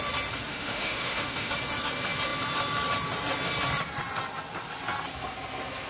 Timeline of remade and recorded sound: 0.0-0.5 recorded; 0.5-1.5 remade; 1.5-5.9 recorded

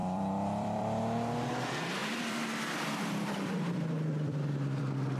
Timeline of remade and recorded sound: 0.0-1.0 remade; 1.0-2.0 recorded; 2.0-4.8 remade; 4.8-5.2 recorded

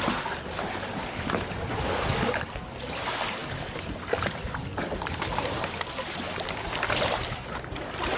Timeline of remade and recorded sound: 0.0-8.2 recorded

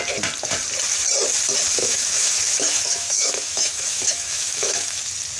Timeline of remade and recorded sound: 0.0-1.8 recorded; 1.8-5.0 remade; 5.0-5.4 recorded

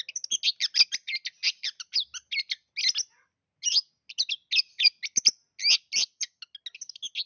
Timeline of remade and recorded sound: 0.0-7.3 recorded